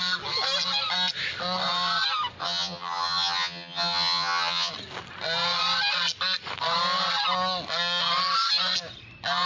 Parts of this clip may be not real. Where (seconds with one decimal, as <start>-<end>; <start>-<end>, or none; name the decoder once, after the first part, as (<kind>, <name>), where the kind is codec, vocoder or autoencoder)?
2.4-4.7 (vocoder, HiFi-GAN)